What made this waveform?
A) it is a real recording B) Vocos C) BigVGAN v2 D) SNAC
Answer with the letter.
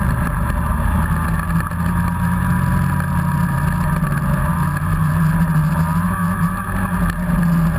A